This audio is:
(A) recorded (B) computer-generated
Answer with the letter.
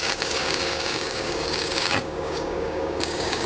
B